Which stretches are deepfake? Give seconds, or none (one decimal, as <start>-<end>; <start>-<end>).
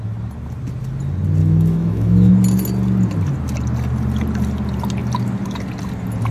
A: 1.4-2.3